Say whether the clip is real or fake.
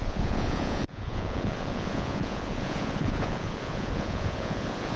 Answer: fake